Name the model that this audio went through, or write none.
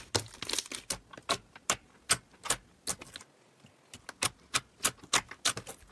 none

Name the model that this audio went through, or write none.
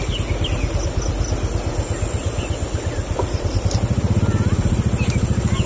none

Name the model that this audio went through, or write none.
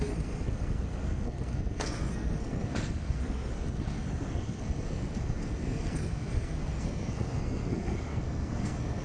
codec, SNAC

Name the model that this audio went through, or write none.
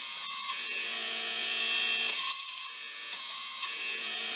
vocoder, Vocos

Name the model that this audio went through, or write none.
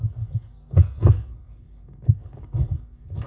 codec, SNAC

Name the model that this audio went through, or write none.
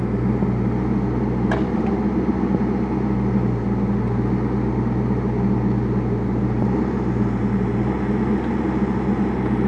none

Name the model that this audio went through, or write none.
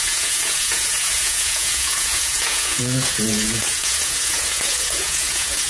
vocoder, Vocos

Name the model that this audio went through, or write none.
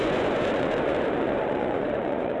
vocoder, Vocos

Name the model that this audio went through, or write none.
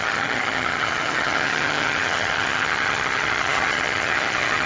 vocoder, HiFi-GAN